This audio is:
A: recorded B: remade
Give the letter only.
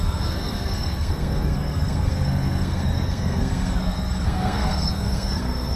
B